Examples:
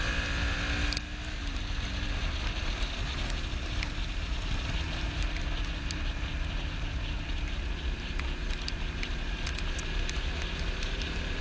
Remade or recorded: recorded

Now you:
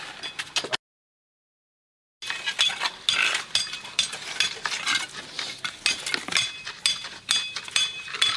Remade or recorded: recorded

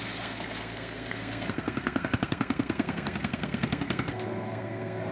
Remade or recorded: remade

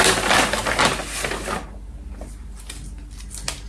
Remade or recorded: recorded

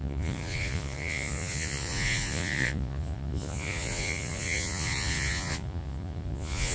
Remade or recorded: remade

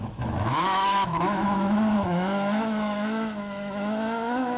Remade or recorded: remade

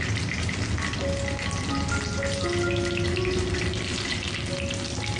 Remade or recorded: recorded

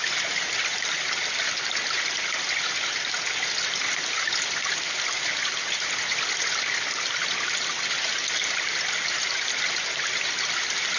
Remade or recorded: recorded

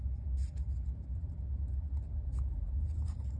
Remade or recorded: recorded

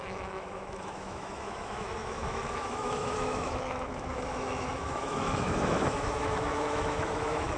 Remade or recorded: remade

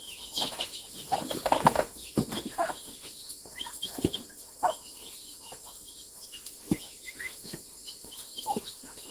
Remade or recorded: remade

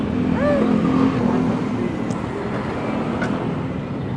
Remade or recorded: recorded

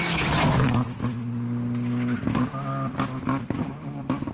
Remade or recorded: recorded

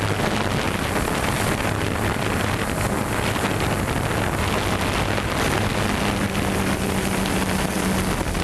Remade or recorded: recorded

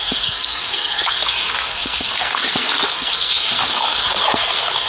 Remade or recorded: remade